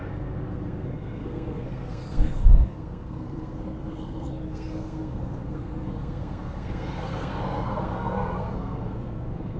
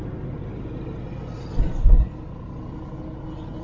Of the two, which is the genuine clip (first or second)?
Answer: second